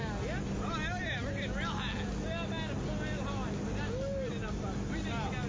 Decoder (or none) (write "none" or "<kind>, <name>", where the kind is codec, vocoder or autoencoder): none